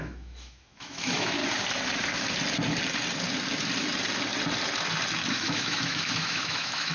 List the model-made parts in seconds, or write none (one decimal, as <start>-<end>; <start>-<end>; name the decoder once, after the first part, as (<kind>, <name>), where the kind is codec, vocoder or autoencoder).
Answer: 0.0-1.4 (autoencoder, DAC-VAE); 5.3-6.9